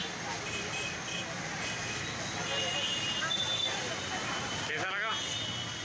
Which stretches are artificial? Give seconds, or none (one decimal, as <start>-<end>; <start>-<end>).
none